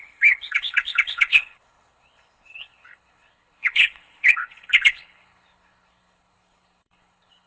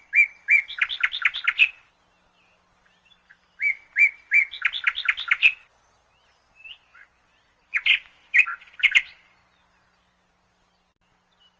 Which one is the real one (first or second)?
second